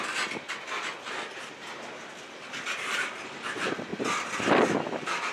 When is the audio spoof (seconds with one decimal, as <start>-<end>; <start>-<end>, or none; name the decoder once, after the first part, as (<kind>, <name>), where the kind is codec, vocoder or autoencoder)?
none